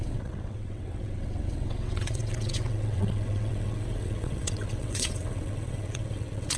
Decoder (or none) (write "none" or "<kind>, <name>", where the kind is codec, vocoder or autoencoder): vocoder, WaveNeXt